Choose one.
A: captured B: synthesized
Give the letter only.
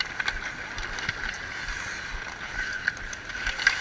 A